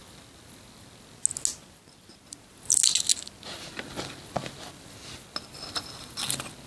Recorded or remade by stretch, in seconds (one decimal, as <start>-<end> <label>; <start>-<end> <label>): 0.0-6.7 recorded